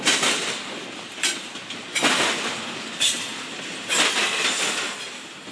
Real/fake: real